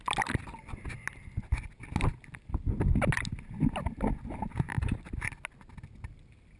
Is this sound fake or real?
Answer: real